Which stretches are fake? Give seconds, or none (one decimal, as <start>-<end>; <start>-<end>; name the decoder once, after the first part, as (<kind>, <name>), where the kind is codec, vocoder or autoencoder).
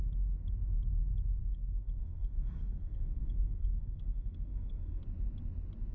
1.5-5.0 (codec, SNAC)